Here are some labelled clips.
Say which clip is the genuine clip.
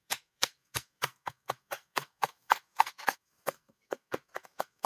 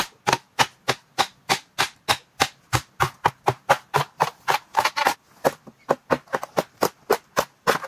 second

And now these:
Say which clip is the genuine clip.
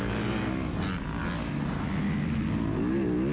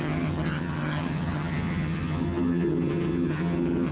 first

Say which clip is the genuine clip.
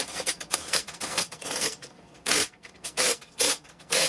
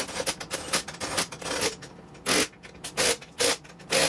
second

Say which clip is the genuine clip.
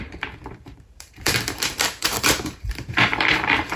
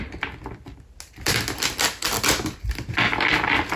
second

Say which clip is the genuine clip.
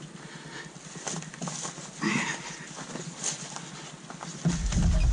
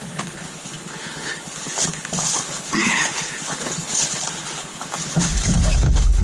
first